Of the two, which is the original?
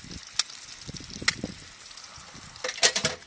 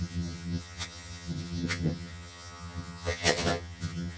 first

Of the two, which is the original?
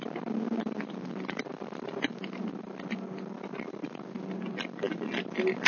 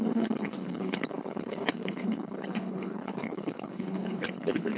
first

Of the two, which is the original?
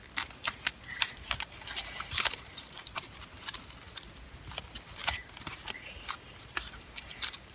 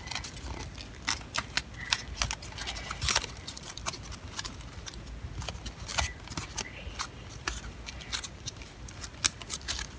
second